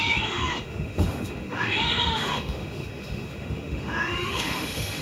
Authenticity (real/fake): fake